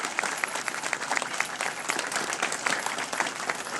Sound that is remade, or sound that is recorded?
recorded